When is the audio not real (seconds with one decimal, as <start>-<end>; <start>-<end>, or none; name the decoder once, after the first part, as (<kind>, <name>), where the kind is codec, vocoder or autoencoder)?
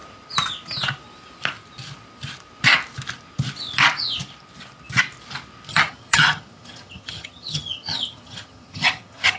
5.7-9.4 (vocoder, HiFi-GAN)